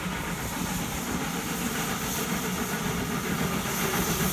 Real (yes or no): yes